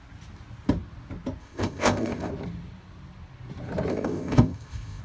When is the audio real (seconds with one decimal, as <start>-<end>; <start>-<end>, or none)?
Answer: 0.0-1.4; 2.3-3.9